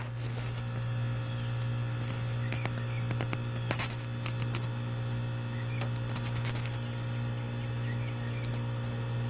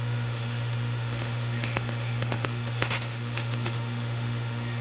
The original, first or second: first